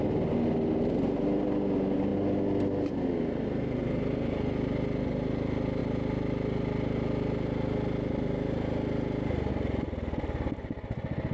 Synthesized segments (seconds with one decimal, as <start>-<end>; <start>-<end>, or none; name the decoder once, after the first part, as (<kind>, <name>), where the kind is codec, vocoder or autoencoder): none